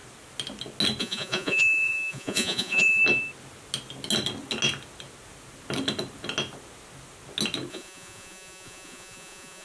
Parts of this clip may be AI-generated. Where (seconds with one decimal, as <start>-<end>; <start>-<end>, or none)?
1.0-3.0; 7.7-9.6